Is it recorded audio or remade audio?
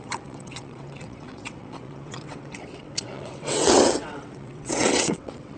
remade